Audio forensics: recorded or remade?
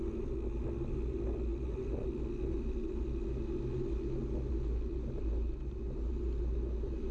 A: recorded